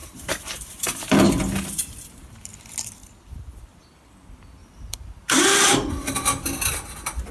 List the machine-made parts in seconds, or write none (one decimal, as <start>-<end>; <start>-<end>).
0.0-1.3; 4.6-6.1